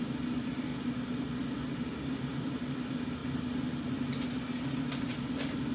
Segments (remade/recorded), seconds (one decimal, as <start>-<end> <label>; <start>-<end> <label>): 0.0-0.7 remade; 0.7-2.7 recorded; 2.7-3.2 remade; 3.2-5.0 recorded; 5.0-5.7 remade